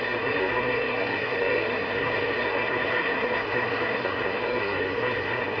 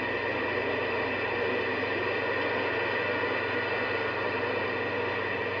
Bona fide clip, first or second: second